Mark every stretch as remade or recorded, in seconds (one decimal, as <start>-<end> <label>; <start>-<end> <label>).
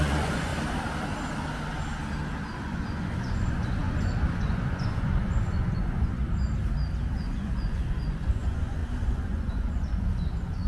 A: 0.0-0.5 remade; 0.5-2.4 recorded; 2.4-6.2 remade; 6.2-7.1 recorded; 7.1-10.7 remade